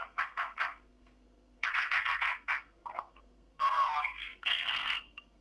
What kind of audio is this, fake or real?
fake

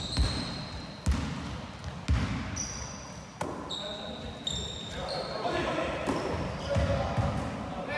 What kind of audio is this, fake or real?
real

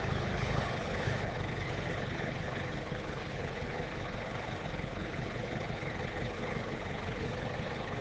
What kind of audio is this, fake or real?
fake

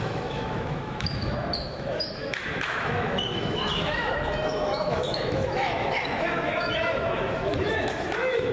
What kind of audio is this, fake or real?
fake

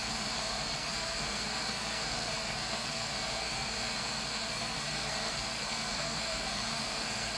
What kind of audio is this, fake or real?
fake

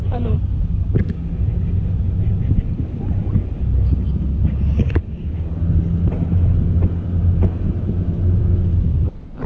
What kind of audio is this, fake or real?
real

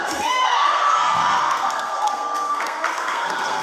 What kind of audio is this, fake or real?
fake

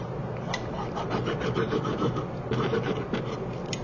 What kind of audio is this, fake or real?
real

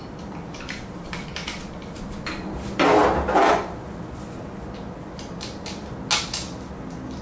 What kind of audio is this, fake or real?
real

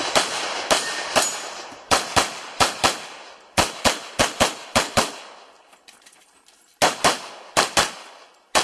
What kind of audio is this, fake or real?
real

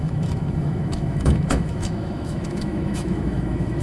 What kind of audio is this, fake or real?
fake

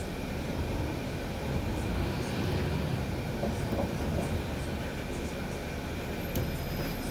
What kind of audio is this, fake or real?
real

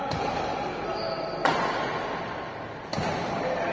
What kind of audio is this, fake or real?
real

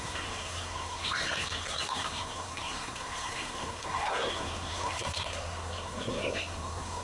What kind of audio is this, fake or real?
fake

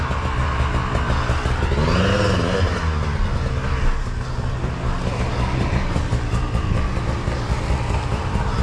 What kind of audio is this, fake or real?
real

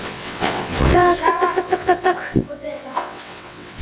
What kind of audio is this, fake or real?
fake